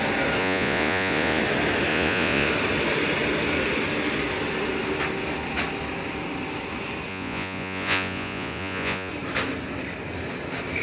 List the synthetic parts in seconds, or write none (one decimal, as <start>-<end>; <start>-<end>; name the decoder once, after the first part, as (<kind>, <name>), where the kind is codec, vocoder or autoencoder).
0.4-1.4 (vocoder, Vocos); 1.9-2.5; 7.1-9.1